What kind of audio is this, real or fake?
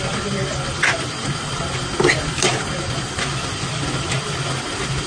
real